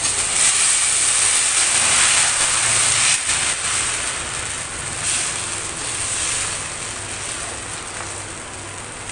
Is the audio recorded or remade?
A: recorded